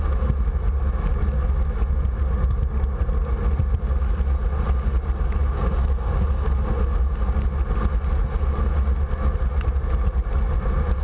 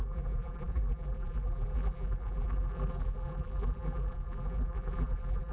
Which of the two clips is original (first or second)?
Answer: first